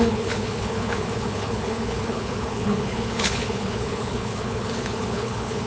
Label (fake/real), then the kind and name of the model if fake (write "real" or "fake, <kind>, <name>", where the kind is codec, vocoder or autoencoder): fake, codec, HILCodec